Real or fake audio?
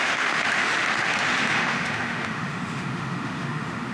fake